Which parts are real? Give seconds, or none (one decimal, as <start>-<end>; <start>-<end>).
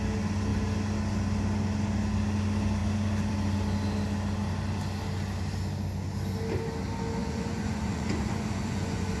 0.0-7.2